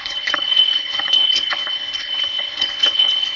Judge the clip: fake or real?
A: fake